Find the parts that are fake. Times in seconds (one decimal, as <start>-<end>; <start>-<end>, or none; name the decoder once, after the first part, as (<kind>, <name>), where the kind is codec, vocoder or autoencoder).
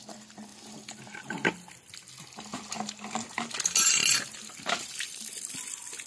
none